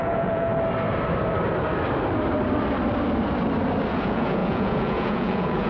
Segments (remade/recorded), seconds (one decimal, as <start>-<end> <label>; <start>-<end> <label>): 0.0-0.5 remade; 0.5-3.9 recorded; 3.9-5.7 remade